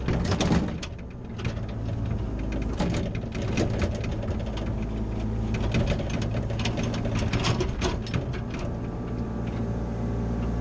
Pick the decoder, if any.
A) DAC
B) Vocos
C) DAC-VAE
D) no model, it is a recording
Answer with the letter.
D